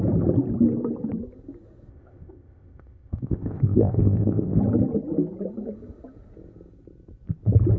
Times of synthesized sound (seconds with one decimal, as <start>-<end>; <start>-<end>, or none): 1.9-4.6